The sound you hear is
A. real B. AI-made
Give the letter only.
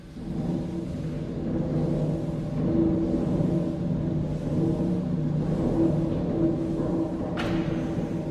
A